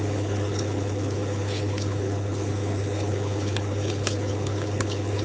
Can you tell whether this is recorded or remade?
remade